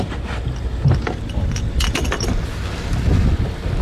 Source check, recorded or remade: recorded